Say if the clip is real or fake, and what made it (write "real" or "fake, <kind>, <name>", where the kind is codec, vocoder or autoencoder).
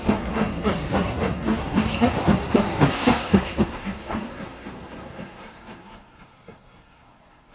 fake, codec, SNAC